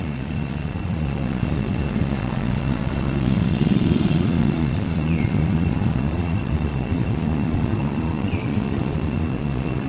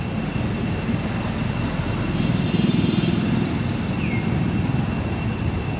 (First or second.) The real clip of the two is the second